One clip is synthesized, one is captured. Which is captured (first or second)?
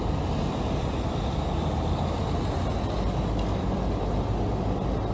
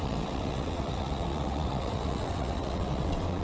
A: first